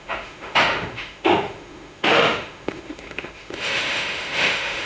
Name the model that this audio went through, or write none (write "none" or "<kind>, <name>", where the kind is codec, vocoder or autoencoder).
autoencoder, DAC-VAE